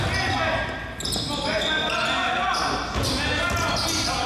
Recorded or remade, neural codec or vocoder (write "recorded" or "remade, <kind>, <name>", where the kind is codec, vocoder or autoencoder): recorded